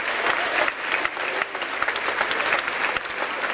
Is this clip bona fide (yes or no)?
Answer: yes